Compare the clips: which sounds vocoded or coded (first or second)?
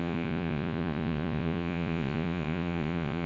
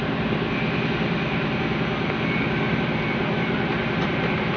first